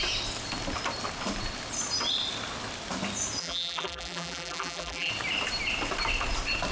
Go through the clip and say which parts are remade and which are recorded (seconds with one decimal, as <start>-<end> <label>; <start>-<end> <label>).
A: 0.0-3.4 recorded; 3.4-5.1 remade; 5.1-6.7 recorded